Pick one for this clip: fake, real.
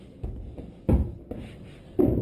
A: real